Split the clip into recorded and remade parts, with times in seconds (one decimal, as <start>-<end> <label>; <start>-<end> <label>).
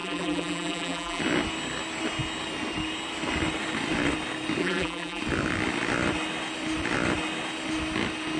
0.0-1.2 remade; 1.2-4.6 recorded; 4.6-5.2 remade; 5.2-8.4 recorded